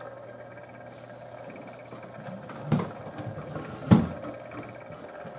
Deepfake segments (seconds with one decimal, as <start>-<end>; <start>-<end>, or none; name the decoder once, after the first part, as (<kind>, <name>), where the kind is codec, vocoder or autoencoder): none